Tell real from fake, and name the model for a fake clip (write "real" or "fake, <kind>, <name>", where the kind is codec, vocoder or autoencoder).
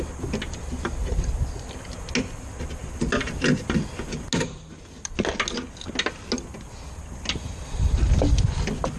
real